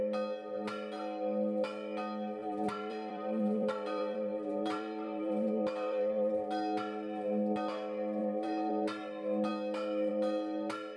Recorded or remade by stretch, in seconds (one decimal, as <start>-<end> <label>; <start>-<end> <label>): 0.0-2.4 recorded; 2.4-6.5 remade; 6.5-8.2 recorded; 8.2-8.7 remade; 8.7-11.0 recorded